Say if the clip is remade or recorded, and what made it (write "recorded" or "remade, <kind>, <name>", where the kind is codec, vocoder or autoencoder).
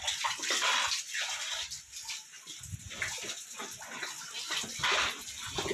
recorded